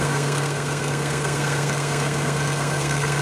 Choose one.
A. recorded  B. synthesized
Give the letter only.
B